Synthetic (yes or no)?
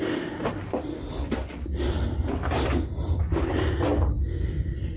no